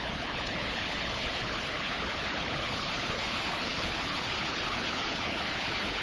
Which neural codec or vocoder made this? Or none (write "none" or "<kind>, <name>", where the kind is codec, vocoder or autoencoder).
codec, HILCodec